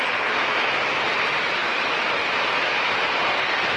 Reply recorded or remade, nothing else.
recorded